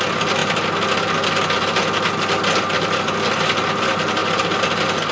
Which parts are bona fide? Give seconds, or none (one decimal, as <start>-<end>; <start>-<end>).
0.0-5.1